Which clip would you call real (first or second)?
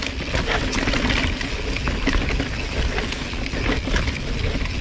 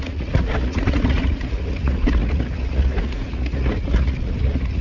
first